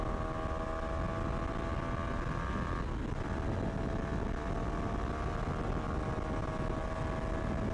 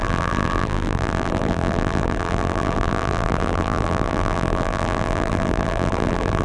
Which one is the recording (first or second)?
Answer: first